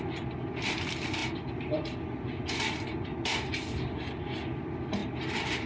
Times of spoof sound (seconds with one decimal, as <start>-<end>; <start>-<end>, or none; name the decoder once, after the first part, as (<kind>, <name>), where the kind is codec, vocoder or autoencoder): none